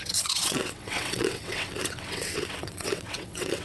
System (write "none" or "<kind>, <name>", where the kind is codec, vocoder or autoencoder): vocoder, WaveNeXt